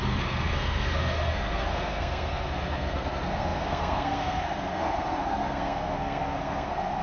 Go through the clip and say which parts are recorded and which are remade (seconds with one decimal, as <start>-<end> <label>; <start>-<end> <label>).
0.0-7.0 remade